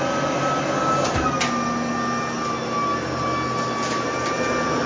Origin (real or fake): real